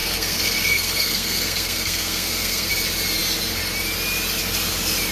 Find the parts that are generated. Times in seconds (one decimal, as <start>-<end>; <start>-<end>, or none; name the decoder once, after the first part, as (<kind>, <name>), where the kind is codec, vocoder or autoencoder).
0.0-2.7 (codec, SNAC)